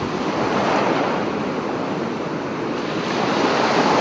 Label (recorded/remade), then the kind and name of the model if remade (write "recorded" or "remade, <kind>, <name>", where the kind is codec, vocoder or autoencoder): recorded